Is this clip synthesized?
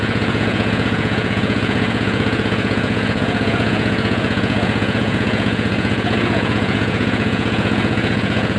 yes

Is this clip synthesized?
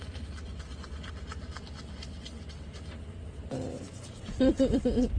no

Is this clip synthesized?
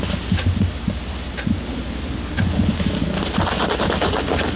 no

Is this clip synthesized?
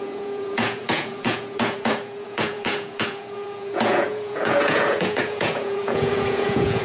yes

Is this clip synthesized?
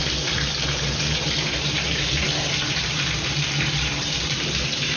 yes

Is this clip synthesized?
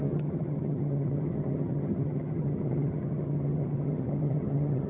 yes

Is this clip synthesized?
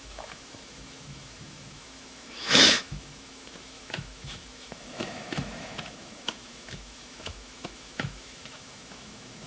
yes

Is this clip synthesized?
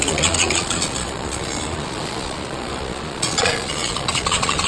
yes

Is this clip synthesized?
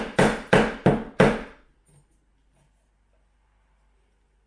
no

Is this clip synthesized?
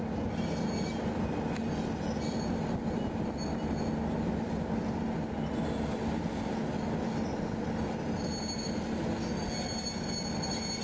no